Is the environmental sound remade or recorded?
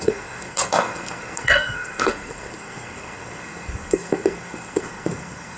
remade